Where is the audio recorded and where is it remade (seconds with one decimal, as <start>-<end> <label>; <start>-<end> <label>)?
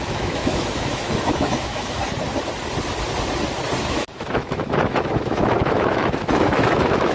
0.0-2.0 remade; 2.0-3.9 recorded; 3.9-7.1 remade